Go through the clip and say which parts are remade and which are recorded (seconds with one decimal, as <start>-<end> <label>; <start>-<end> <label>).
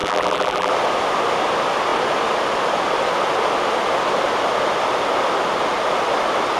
0.0-0.7 remade; 0.7-6.6 recorded